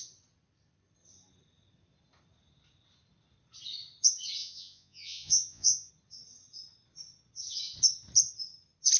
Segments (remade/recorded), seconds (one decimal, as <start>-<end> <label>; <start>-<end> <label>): 0.0-4.4 recorded; 4.4-5.9 remade; 5.9-9.0 recorded